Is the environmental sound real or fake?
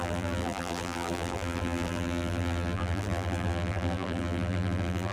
fake